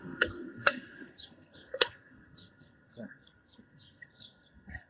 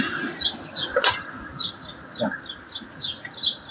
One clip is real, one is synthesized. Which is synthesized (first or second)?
first